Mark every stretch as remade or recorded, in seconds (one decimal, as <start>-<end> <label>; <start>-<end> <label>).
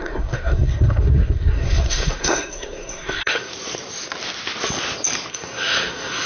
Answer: 0.0-3.5 remade; 3.5-5.3 recorded; 5.3-6.3 remade